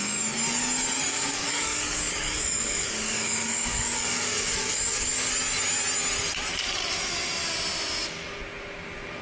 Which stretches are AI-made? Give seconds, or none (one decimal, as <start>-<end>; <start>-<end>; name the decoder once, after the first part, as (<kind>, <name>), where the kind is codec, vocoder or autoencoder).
1.1-5.3 (codec, DAC)